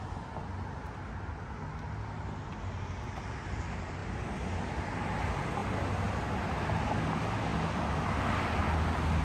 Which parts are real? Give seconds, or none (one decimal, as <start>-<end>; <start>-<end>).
0.0-9.2